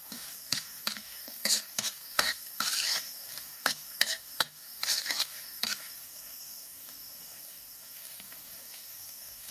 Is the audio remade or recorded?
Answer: remade